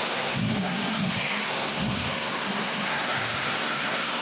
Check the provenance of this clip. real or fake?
fake